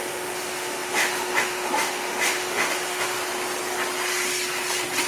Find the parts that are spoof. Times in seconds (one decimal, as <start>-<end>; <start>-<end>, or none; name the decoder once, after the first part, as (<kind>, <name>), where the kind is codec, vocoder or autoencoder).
0.0-3.2 (autoencoder, DAC-VAE)